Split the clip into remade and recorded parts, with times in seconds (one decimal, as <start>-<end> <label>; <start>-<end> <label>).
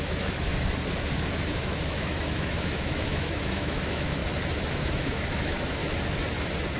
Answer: 0.0-0.5 remade; 0.5-1.5 recorded; 1.5-4.2 remade; 4.2-4.7 recorded; 4.7-5.8 remade; 5.8-6.8 recorded